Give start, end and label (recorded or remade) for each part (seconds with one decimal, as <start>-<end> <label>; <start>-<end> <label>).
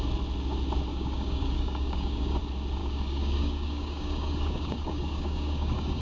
0.0-0.9 recorded; 0.9-2.4 remade; 2.4-2.8 recorded; 2.8-6.0 remade